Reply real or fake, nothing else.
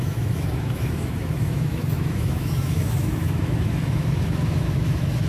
fake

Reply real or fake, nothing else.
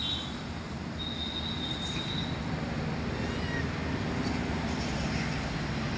real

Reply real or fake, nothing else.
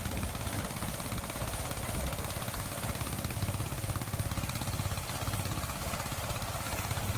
real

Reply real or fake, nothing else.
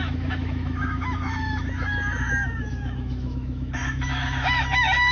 fake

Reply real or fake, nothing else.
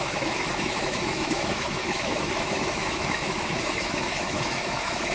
fake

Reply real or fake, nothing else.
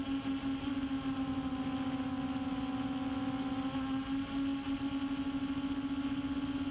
real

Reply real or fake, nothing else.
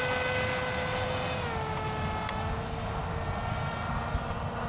real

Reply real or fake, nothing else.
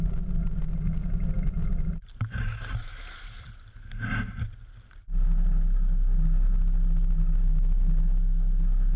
real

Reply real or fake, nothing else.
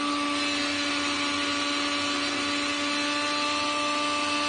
real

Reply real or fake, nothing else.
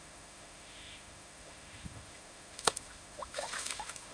fake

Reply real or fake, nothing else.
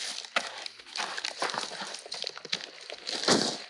real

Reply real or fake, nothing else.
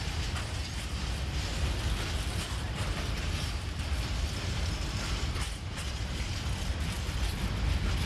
real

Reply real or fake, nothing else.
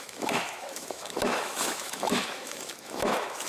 fake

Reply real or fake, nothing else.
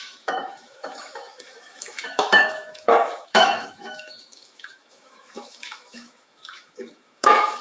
fake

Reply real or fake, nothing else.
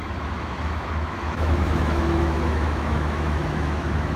fake